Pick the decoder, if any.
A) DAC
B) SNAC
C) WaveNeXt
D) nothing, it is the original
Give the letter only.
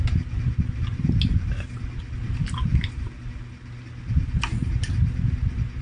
D